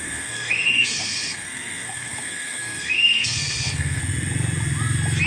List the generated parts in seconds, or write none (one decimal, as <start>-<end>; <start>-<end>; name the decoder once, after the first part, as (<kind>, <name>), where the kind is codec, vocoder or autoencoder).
0.0-4.0 (codec, SNAC)